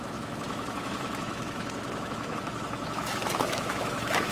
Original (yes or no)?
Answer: no